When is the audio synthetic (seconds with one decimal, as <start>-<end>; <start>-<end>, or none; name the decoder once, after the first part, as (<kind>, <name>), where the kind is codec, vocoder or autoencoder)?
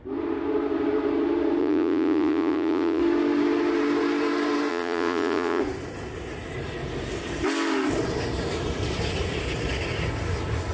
1.6-3.0 (vocoder, Vocos); 4.7-5.6